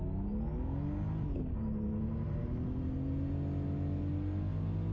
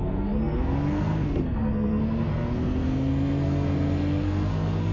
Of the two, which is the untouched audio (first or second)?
first